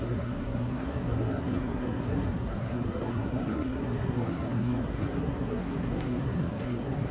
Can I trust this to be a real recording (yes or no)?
no